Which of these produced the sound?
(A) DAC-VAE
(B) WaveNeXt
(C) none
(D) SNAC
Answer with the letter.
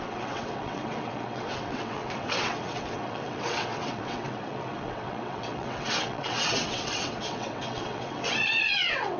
B